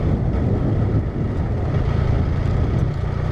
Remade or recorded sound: recorded